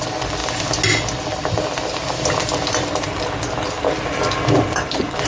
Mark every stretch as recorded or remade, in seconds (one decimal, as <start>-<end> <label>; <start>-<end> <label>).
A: 0.0-5.3 recorded